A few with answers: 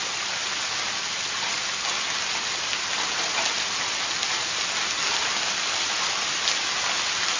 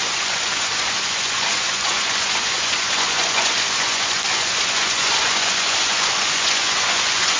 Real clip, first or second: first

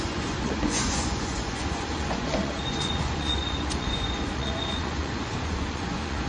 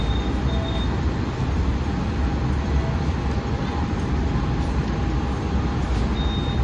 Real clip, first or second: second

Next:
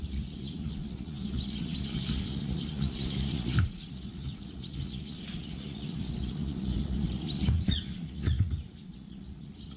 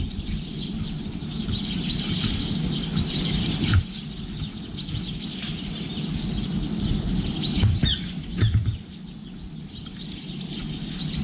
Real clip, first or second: second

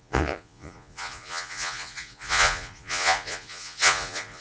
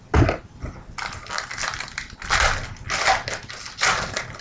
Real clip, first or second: second